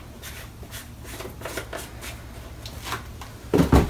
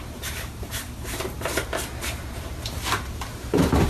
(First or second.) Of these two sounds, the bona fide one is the first